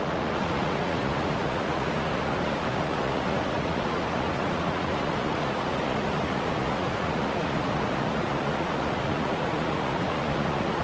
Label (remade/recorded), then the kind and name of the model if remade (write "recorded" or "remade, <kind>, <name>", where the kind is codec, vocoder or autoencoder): remade, vocoder, Vocos